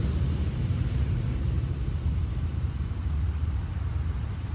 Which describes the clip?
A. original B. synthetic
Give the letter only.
B